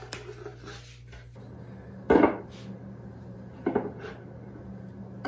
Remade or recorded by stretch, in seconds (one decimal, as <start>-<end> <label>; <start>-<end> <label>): 0.0-3.1 recorded; 3.1-3.7 remade; 3.7-5.3 recorded